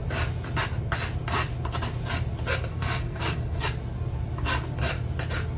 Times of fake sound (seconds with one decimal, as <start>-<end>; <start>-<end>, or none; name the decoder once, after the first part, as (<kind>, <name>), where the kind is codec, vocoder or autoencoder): 2.7-3.6 (codec, SNAC)